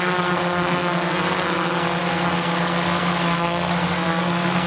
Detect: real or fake fake